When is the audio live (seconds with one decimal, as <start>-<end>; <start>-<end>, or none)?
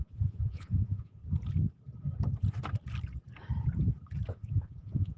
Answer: 1.2-4.3